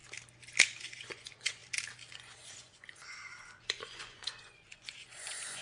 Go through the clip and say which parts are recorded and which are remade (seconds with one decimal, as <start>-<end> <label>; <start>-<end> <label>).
0.0-0.8 recorded; 0.8-1.6 remade; 1.6-2.1 recorded; 2.1-5.6 remade